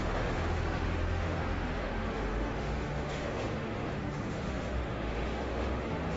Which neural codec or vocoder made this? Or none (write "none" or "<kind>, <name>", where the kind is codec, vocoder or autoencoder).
autoencoder, DAC-VAE